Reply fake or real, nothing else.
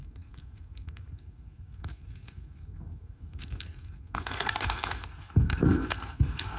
fake